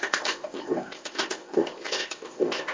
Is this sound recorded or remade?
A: remade